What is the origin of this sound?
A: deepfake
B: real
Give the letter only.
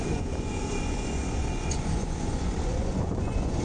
A